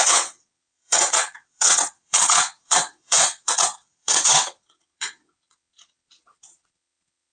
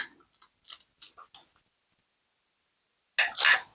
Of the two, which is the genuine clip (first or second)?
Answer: second